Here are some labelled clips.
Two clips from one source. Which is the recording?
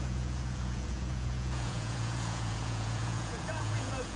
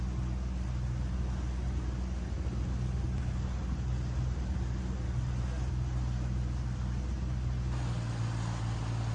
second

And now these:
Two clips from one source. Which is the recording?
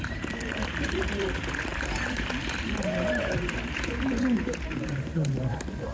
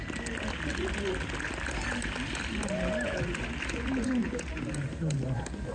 second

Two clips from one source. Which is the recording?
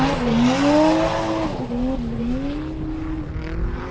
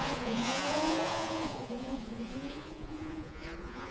first